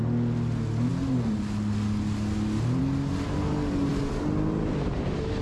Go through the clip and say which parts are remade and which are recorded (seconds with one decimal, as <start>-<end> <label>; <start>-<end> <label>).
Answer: 0.0-5.4 recorded